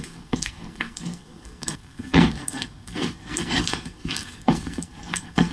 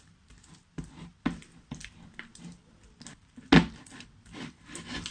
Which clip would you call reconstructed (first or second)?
first